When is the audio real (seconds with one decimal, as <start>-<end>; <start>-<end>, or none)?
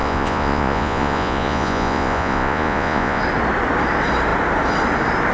3.2-5.3